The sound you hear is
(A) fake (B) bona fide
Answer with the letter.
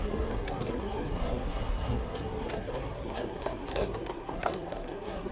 A